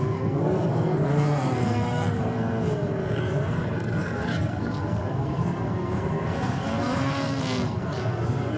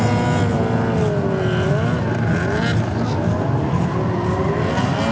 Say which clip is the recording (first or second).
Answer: second